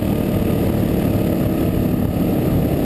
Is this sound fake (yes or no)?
no